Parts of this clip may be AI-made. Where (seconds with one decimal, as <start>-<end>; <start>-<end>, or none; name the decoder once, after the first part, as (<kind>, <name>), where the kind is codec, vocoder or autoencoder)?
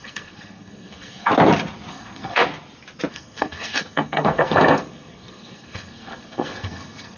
0.0-1.3 (codec, SNAC); 1.9-2.4; 3.1-7.2